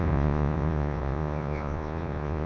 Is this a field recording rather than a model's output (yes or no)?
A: no